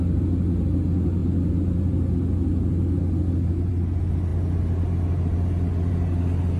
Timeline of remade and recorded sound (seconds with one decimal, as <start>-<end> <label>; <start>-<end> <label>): 0.0-6.6 recorded

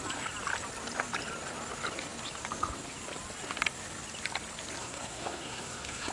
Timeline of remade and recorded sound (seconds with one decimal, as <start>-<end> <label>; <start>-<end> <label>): 0.0-4.8 recorded; 4.8-6.1 remade

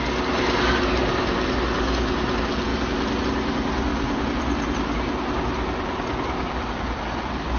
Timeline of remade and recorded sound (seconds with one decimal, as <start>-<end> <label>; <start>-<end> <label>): 0.0-7.6 recorded